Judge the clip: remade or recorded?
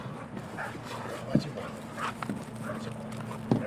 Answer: recorded